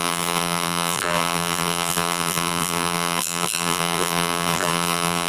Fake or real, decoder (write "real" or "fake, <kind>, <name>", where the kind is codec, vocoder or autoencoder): fake, vocoder, BigVGAN v2